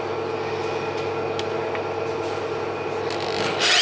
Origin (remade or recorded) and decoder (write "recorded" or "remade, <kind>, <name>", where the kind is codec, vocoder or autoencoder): recorded